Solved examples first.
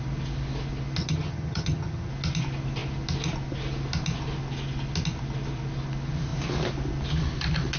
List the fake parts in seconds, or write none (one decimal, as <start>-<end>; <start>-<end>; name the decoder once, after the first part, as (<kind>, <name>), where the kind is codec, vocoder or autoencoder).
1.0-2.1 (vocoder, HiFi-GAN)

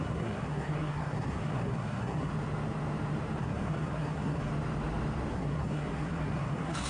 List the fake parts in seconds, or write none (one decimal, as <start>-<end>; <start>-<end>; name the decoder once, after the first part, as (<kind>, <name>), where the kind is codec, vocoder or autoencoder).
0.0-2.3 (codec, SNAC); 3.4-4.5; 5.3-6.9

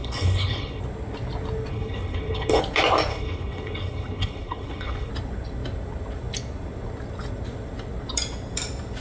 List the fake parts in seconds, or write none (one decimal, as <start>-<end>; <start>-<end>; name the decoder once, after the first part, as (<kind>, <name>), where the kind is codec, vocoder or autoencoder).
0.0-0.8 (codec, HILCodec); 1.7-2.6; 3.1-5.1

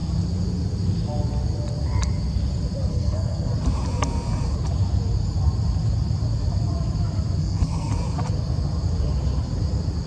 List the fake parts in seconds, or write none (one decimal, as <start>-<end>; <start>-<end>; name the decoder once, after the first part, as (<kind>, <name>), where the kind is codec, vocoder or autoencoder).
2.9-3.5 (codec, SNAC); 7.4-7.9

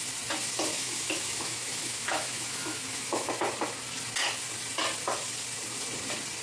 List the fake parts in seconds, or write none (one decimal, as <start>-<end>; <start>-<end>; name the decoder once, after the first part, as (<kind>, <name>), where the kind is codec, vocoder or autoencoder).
0.7-3.3 (autoencoder, DAC-VAE)

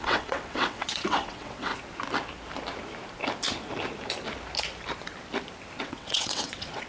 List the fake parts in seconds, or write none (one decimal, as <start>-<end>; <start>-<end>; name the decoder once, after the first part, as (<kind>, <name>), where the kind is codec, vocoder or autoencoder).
0.0-1.7 (vocoder, WaveNeXt); 5.8-6.9

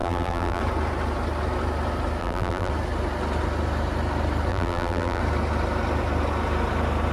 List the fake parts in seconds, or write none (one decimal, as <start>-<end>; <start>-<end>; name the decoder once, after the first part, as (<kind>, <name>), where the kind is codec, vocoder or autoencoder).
0.0-0.6 (vocoder, BigVGAN v2); 2.2-2.7; 4.5-5.2

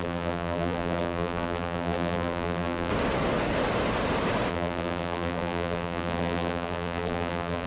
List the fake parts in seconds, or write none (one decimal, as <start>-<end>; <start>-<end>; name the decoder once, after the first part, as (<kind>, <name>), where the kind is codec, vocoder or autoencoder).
0.0-2.9 (vocoder, BigVGAN v2); 4.5-7.7